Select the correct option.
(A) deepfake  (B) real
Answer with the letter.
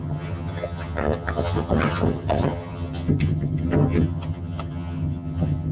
A